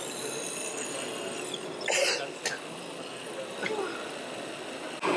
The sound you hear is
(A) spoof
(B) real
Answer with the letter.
B